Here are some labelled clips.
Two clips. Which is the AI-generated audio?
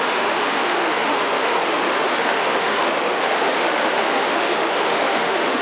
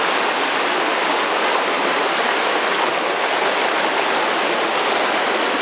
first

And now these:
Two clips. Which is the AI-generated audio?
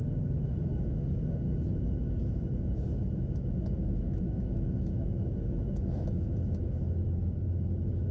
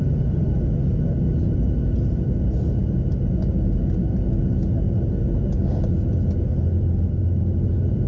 first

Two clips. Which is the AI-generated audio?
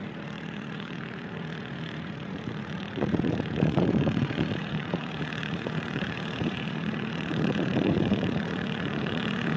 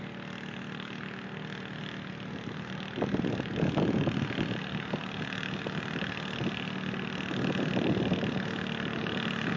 first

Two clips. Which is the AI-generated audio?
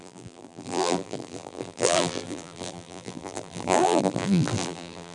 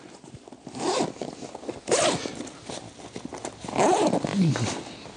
first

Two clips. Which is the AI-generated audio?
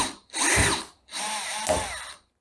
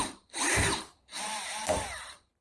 second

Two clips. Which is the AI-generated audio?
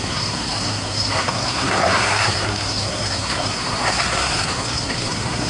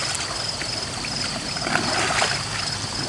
first